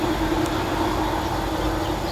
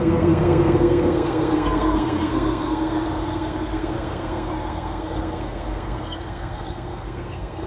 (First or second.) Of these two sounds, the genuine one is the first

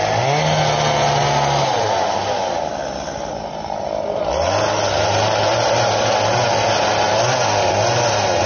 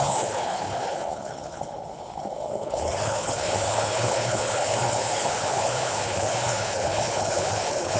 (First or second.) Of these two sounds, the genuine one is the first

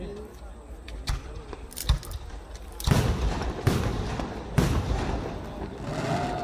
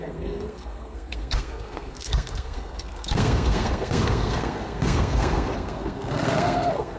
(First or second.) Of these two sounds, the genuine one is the first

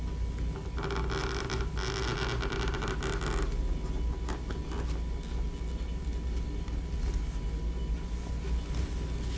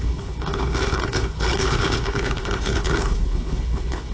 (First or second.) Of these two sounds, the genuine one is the first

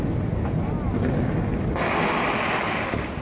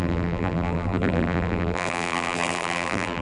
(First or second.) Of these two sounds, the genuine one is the first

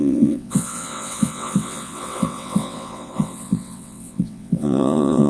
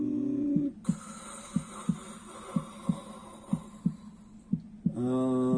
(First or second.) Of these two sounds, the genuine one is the second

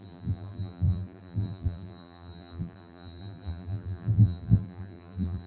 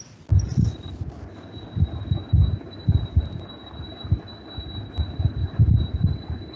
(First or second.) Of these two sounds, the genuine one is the second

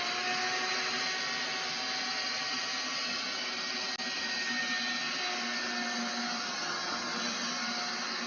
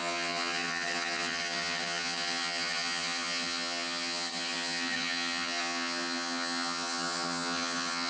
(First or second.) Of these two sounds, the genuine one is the first